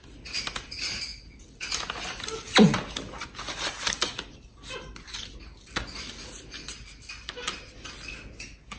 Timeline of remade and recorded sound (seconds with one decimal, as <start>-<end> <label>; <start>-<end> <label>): 0.0-8.8 recorded